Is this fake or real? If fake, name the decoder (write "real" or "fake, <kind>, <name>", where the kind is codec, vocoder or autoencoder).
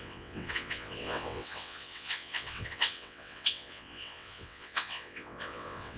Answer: fake, vocoder, WaveNeXt